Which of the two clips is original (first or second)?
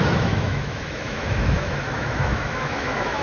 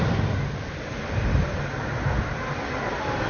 second